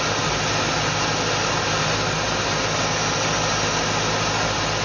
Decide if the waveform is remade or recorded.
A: recorded